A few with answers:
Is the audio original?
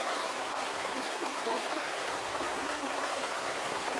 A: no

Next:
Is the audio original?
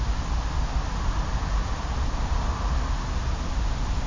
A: yes